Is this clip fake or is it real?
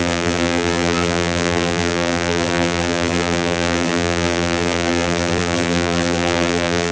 fake